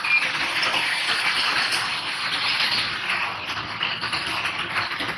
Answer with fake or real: real